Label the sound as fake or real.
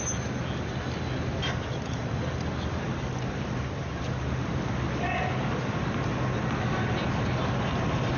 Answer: real